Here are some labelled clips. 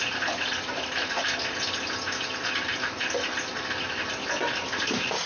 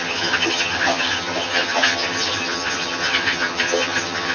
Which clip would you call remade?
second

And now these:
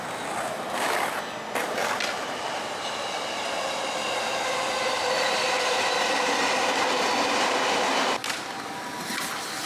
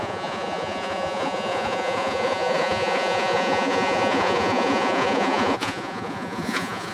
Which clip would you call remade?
second